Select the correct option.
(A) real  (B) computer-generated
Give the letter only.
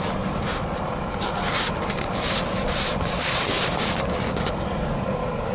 A